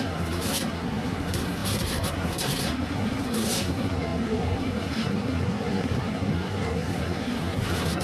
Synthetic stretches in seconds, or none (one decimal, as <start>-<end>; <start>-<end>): 0.0-8.0